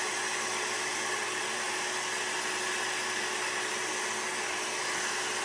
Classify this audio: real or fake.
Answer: real